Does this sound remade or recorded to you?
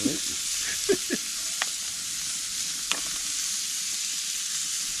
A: recorded